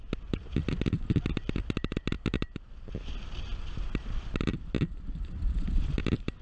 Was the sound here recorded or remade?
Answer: remade